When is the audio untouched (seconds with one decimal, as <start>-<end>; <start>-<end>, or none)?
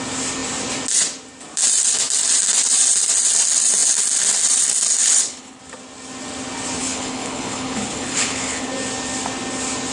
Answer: 0.0-5.0; 5.6-6.8; 8.7-9.9